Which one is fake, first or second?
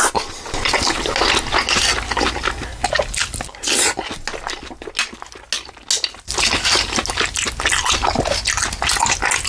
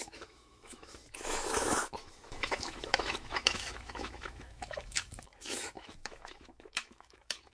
second